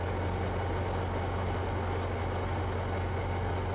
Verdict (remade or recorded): recorded